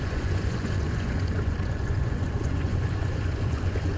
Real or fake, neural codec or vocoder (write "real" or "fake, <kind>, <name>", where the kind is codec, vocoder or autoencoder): fake, vocoder, Vocos